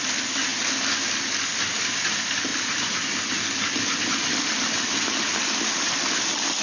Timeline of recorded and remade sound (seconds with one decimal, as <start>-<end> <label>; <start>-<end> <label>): 0.0-6.6 recorded